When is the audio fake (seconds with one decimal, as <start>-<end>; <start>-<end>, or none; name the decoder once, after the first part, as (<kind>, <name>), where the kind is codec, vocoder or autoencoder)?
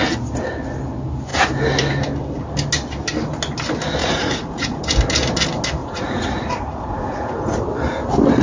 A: 4.0-4.8 (vocoder, Vocos); 5.8-7.6